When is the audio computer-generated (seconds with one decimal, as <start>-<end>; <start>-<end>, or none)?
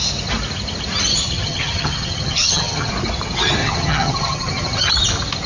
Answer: 1.1-2.9; 3.6-4.9